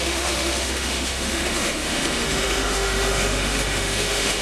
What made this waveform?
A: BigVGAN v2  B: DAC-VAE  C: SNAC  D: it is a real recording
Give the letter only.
B